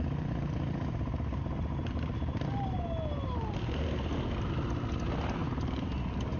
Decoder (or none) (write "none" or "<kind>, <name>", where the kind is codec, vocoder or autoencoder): none